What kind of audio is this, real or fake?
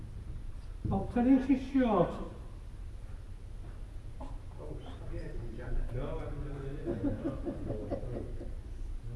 real